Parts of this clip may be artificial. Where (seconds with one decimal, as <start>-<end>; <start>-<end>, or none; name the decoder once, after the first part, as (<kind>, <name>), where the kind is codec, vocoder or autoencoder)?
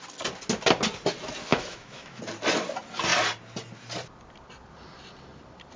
1.5-2.2 (autoencoder, DAC-VAE)